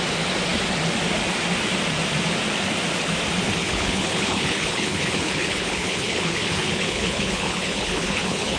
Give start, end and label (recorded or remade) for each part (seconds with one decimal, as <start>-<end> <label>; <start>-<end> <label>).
0.0-3.6 recorded; 3.6-8.6 remade